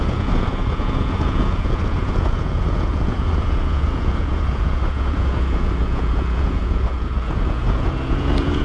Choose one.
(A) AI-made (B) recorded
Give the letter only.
A